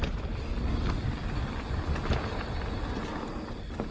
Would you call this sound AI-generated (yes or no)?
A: no